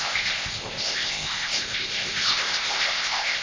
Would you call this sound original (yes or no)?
no